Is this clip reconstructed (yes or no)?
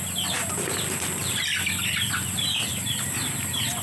no